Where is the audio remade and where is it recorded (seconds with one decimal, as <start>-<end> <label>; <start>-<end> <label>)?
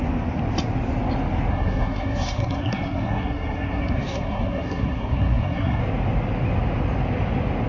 0.0-1.5 recorded; 1.5-5.8 remade; 5.8-7.7 recorded